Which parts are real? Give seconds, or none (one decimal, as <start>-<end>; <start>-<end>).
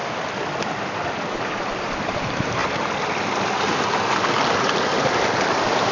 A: 0.0-1.3; 2.6-5.4